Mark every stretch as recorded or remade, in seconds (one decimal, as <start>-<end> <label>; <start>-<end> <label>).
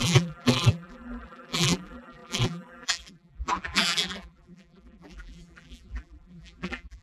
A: 0.0-7.0 remade